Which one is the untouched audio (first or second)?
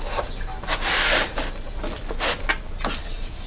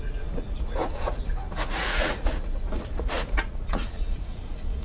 first